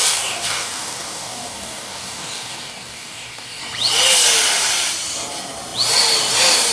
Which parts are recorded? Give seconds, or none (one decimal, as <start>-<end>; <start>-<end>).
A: 3.6-6.7